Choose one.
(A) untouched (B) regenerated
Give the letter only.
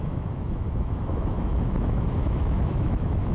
B